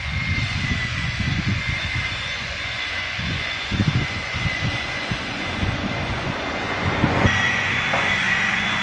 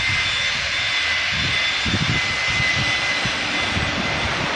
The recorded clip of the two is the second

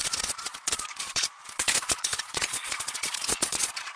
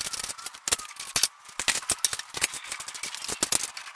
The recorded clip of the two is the second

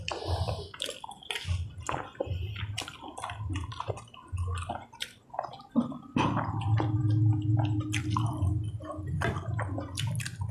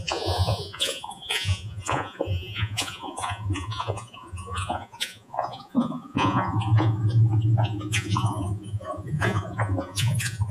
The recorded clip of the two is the first